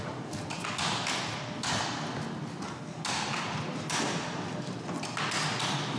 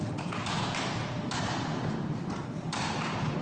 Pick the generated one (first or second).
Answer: second